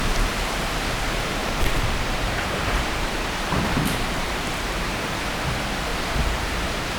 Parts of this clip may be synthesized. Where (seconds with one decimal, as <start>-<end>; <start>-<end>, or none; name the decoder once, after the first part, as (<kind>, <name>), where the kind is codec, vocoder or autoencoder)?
1.4-5.2 (vocoder, BigVGAN v2); 5.9-6.5